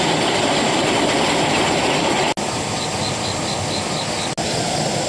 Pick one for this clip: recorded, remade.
recorded